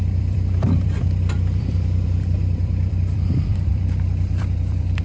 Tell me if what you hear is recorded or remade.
remade